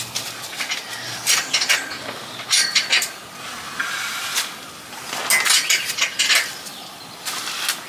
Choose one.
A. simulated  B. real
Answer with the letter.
B